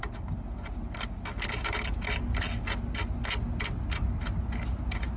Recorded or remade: recorded